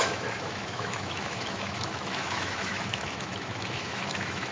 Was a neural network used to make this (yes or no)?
yes